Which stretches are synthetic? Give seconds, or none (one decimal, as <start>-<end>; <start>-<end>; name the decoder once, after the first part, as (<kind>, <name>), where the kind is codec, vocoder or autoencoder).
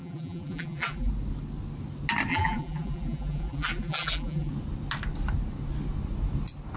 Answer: 0.0-1.1 (vocoder, BigVGAN v2); 2.3-4.5